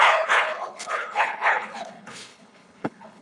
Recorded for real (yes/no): no